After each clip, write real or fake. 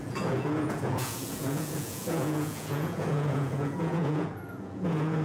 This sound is fake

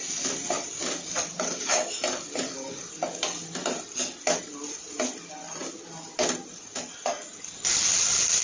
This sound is real